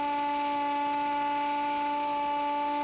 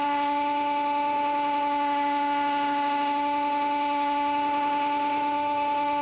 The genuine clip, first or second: first